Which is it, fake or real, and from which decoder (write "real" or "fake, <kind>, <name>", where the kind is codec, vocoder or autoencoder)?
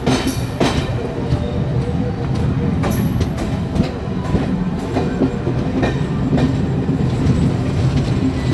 real